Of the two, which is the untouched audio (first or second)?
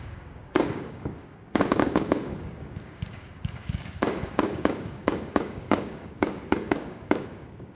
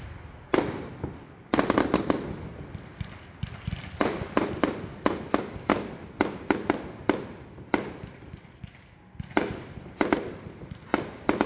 second